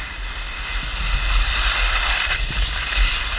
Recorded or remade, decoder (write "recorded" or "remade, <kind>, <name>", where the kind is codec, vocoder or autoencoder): recorded